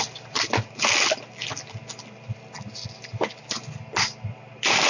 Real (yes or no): yes